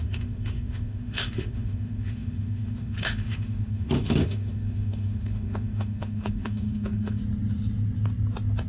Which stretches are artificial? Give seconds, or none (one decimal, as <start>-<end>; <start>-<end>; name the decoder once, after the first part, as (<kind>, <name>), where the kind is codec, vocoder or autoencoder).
0.0-7.2 (autoencoder, DAC-VAE)